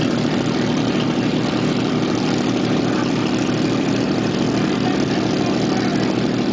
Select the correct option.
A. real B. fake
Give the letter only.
A